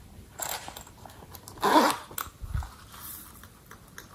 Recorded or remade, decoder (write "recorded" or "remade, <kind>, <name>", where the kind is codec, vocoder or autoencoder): recorded